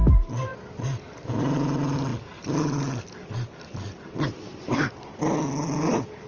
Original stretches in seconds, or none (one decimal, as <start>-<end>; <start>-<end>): 0.0-6.3